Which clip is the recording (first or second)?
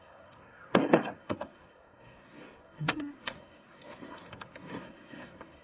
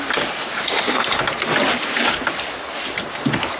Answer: second